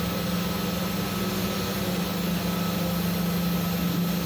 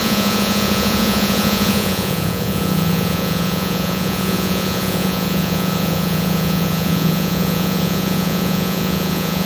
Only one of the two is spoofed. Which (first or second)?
second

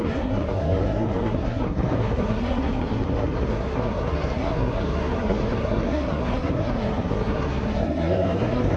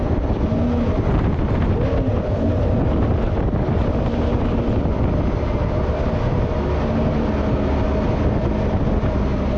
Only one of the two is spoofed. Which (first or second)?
first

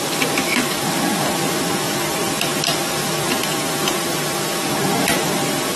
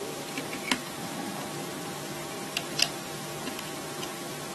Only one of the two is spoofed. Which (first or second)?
first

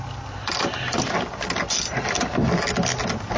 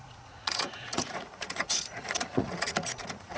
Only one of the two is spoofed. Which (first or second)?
second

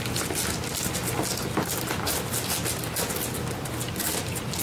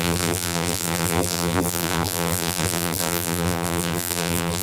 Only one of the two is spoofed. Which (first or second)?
second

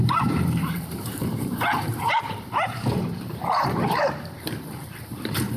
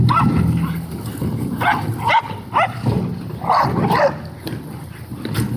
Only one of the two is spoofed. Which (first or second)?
first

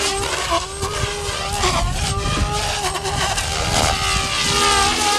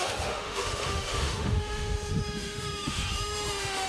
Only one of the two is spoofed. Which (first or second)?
second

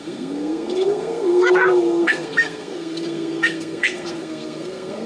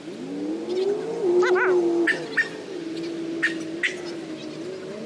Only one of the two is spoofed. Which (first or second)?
first